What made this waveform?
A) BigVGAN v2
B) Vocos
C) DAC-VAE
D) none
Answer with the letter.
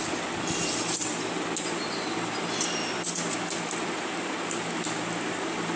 D